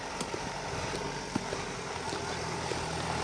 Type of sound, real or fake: real